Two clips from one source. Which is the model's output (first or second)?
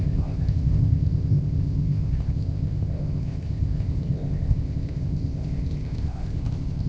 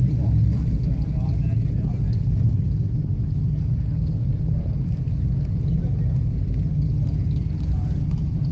first